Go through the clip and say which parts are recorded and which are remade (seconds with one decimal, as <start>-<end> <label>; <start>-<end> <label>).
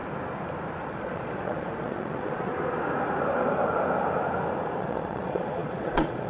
0.0-0.8 recorded; 0.8-2.5 remade; 2.5-4.8 recorded; 4.8-6.3 remade